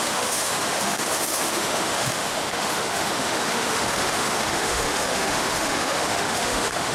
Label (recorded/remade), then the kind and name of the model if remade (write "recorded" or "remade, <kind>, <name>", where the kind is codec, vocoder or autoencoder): remade, autoencoder, DAC-VAE